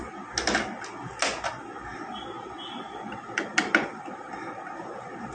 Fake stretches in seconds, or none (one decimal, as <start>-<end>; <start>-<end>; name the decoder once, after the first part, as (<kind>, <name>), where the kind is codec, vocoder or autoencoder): none